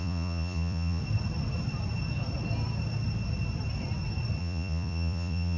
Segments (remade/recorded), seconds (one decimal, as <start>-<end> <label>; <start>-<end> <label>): 0.0-1.0 remade; 1.0-4.4 recorded; 4.4-5.6 remade